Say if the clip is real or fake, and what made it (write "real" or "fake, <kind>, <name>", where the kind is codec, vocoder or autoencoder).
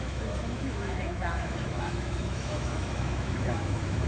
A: fake, autoencoder, DAC-VAE